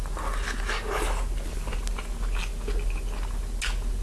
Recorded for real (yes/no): yes